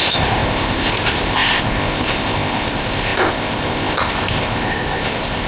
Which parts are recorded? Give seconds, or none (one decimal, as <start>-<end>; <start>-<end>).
none